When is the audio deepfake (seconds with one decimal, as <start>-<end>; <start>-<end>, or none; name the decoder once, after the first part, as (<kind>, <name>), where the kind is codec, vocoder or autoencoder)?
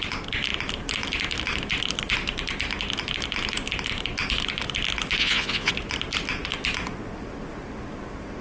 5.2-5.7 (vocoder, Vocos)